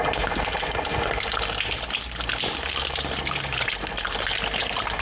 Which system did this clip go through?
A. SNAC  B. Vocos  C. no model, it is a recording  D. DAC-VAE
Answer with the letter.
C